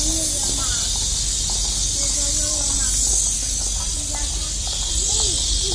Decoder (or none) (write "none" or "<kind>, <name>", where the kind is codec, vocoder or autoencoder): none